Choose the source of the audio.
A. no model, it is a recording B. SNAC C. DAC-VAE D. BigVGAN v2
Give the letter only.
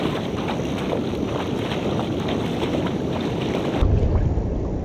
D